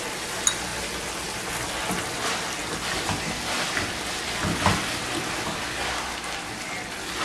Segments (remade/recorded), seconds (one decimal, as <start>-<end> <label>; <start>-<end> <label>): 0.0-0.7 remade; 0.7-2.0 recorded; 2.0-2.6 remade; 2.6-7.2 recorded